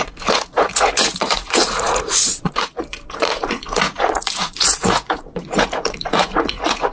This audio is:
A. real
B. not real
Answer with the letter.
B